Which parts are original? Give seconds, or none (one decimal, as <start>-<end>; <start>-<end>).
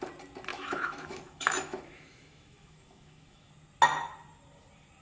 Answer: 0.0-0.5; 3.5-5.0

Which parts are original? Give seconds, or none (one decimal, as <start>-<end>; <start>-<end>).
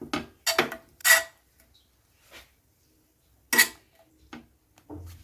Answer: 0.0-5.2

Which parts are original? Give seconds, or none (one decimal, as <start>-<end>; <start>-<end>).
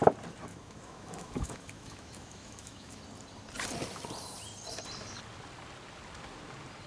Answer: 0.0-0.5; 3.0-6.9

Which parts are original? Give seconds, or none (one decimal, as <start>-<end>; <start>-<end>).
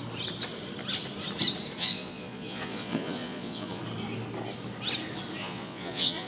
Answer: 0.0-1.8; 3.8-5.4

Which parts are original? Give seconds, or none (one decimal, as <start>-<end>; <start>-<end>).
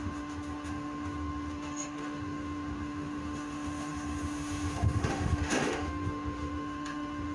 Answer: none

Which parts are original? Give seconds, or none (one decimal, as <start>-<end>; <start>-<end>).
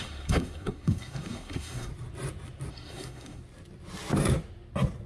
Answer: 1.9-2.7; 3.4-5.1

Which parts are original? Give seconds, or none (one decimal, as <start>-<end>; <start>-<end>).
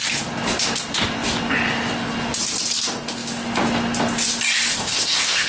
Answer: 0.0-4.7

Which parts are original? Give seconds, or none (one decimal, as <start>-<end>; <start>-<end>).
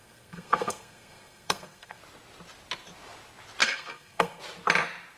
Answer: 2.0-3.6; 4.4-5.2